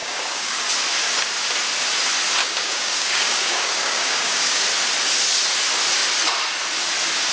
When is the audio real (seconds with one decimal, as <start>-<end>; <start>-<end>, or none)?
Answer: 0.6-2.4; 4.6-7.3